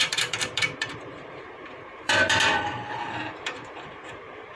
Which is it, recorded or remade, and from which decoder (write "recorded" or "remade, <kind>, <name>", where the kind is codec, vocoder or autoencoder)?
remade, vocoder, BigVGAN v2